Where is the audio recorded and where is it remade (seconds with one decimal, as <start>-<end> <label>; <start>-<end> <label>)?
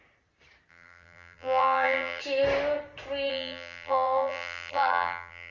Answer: 0.0-0.7 recorded; 0.7-2.2 remade; 2.2-3.3 recorded; 3.3-5.5 remade